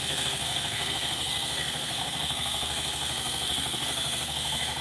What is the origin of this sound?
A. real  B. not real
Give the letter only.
B